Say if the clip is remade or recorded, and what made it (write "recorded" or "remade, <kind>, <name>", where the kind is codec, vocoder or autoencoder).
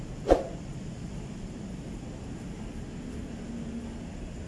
recorded